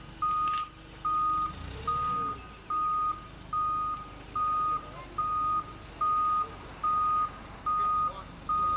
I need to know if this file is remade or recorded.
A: recorded